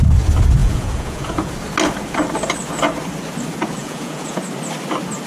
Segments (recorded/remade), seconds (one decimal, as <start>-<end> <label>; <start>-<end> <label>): 0.0-0.6 recorded; 0.6-1.5 remade; 1.5-3.8 recorded; 3.8-4.4 remade; 4.4-5.3 recorded